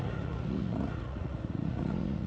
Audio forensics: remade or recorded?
remade